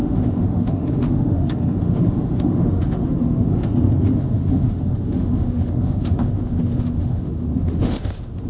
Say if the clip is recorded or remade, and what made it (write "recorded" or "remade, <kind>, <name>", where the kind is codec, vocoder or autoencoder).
remade, autoencoder, DAC-VAE